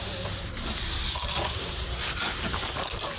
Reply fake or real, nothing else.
real